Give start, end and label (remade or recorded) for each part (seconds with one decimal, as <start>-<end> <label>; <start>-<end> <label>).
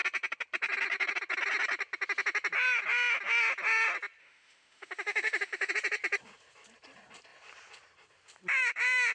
0.0-4.2 recorded; 4.2-5.7 remade; 5.7-9.1 recorded